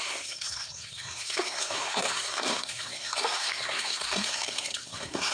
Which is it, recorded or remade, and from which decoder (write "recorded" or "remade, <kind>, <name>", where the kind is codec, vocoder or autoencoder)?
remade, codec, SNAC